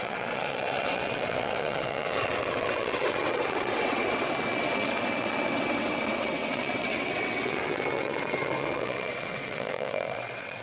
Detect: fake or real fake